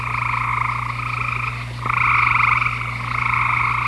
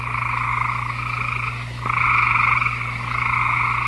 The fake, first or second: second